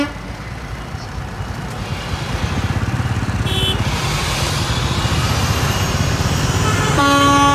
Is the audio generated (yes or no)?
no